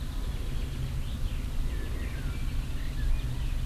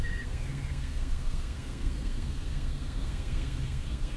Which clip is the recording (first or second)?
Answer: first